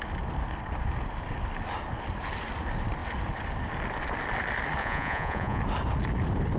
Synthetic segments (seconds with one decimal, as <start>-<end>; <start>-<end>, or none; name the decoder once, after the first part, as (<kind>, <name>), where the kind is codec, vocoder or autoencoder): 4.8-5.6 (vocoder, Vocos)